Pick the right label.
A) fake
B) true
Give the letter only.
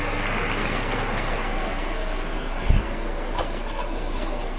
A